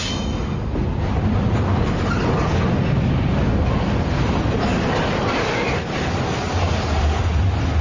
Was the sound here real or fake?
real